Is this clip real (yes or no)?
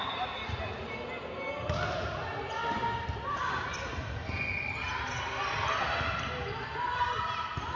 yes